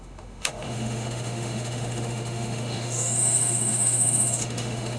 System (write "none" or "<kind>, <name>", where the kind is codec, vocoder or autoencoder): autoencoder, DAC-VAE